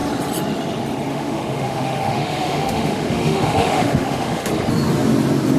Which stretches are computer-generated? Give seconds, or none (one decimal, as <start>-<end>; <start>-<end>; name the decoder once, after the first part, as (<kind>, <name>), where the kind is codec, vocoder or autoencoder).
1.1-4.5 (autoencoder, DAC-VAE)